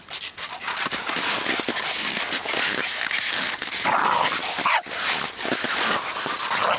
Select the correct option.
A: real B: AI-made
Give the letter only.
A